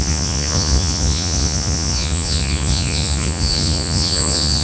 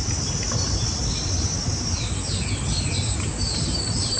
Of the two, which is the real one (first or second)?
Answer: second